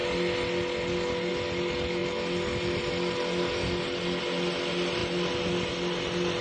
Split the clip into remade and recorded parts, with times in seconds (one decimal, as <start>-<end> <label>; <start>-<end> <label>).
0.0-6.4 recorded